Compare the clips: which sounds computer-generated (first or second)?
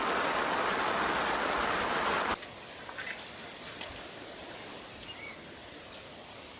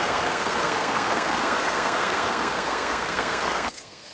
second